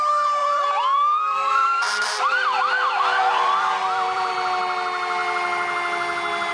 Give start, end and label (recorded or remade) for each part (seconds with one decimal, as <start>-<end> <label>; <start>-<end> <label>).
0.0-0.4 recorded; 0.4-4.3 remade; 4.3-6.5 recorded